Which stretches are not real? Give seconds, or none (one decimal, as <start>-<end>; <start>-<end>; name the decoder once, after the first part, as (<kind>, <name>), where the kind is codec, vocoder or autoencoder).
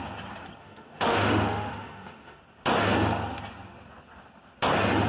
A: 0.6-2.4 (autoencoder, DAC-VAE)